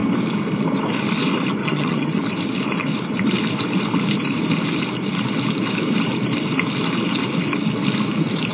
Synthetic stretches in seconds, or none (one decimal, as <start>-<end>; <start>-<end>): 1.6-2.2